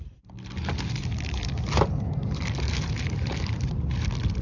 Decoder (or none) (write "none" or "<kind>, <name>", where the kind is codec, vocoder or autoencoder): none